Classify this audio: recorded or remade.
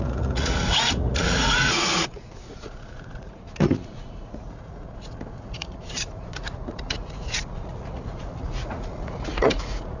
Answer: remade